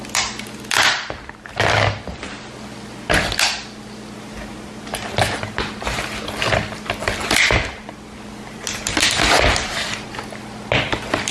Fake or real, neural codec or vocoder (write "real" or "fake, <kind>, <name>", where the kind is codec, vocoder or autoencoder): real